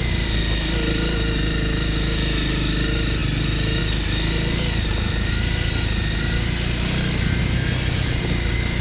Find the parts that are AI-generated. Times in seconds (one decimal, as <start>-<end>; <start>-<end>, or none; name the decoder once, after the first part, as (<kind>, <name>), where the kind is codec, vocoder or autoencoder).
none